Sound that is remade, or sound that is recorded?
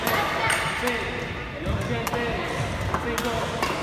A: recorded